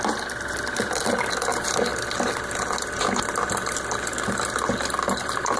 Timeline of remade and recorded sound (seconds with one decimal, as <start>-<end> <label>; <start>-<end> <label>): 0.0-5.6 recorded